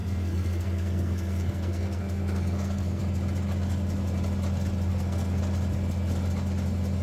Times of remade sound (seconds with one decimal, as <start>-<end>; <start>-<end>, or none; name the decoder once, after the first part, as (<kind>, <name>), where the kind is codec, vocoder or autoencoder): 0.0-3.0 (codec, SNAC); 4.9-5.4